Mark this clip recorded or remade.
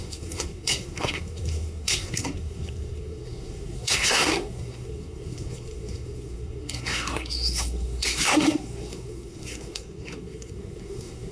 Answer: remade